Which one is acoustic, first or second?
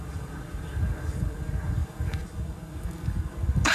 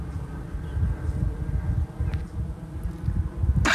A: second